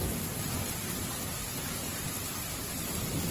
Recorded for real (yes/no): yes